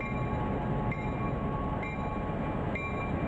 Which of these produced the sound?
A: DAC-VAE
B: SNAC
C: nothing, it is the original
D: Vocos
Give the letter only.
C